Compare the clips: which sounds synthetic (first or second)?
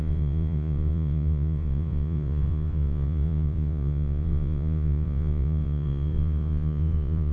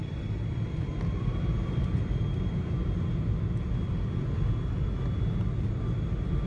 first